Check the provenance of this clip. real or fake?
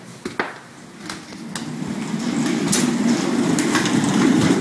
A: real